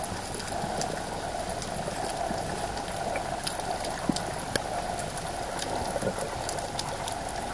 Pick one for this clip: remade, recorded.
recorded